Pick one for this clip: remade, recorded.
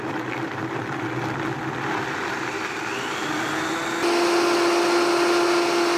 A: recorded